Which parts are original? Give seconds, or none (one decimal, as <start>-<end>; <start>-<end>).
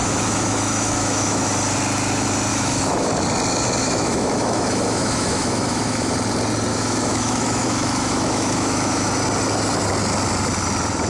1.5-2.5; 3.1-3.8; 6.1-6.7; 9.1-11.1